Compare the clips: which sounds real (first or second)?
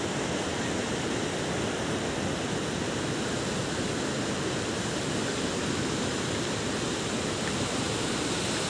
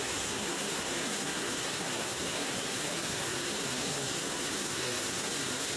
first